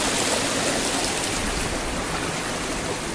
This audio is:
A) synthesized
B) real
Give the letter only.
B